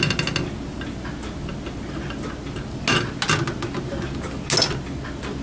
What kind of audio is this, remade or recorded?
recorded